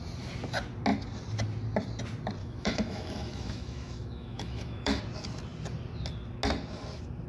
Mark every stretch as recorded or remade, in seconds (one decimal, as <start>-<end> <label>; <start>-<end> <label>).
0.0-2.4 recorded; 2.4-5.0 remade; 5.0-7.3 recorded